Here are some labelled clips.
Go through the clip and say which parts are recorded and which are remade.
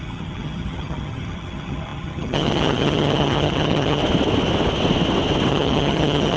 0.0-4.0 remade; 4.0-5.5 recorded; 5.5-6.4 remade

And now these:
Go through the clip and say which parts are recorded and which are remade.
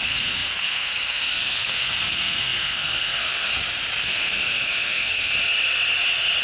0.0-3.5 remade; 3.5-4.0 recorded; 4.0-5.3 remade; 5.3-6.4 recorded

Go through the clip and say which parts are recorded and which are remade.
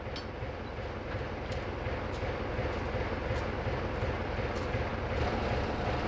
0.0-6.1 recorded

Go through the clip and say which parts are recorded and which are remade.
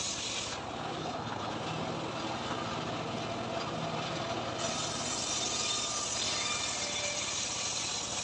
0.0-1.0 recorded; 1.0-1.5 remade; 1.5-8.2 recorded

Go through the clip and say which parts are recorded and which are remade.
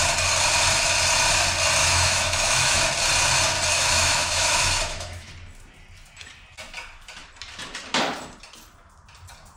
0.0-1.8 recorded; 1.8-2.8 remade; 2.8-3.7 recorded; 3.7-5.3 remade; 5.3-9.6 recorded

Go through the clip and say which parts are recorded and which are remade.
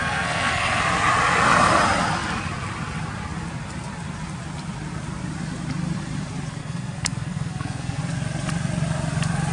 0.0-0.8 remade; 0.8-6.6 recorded; 6.6-8.0 remade; 8.0-9.5 recorded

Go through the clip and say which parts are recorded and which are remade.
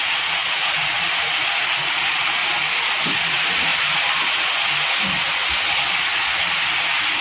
0.0-2.4 remade; 2.4-3.0 recorded; 3.0-3.7 remade; 3.7-6.3 recorded; 6.3-7.2 remade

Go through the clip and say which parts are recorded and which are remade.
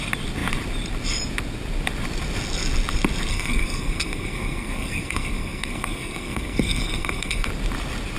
0.0-3.3 recorded; 3.3-7.5 remade; 7.5-8.2 recorded